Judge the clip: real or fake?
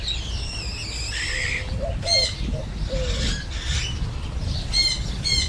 real